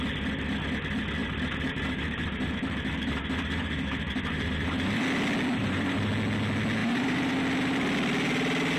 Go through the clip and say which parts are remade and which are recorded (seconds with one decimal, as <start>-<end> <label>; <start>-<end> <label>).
0.0-1.2 recorded; 1.2-5.0 remade; 5.0-5.6 recorded; 5.6-6.1 remade; 6.1-6.8 recorded; 6.8-7.4 remade; 7.4-8.8 recorded